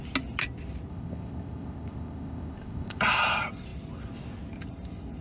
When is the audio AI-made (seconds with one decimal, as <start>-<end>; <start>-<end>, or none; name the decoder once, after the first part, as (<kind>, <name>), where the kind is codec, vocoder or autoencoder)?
0.9-3.0 (codec, ZipCodec)